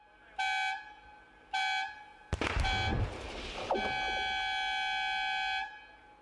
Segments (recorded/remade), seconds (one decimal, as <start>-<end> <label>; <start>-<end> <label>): 0.0-6.2 recorded